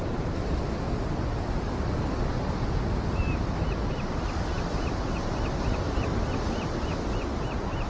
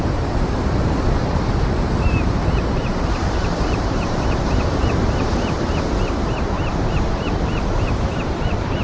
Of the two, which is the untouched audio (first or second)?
first